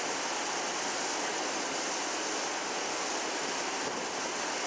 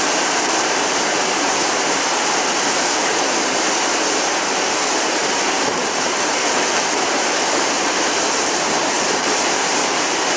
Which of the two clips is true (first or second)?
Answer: first